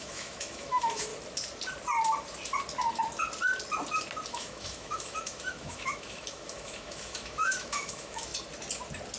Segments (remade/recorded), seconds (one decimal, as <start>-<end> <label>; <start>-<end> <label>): 0.0-1.1 remade; 1.1-4.3 recorded; 4.3-8.3 remade; 8.3-9.2 recorded